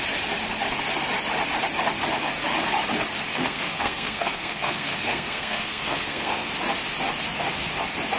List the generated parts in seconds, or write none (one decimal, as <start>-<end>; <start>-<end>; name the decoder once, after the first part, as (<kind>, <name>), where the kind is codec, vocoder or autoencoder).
3.3-6.5 (codec, SNAC)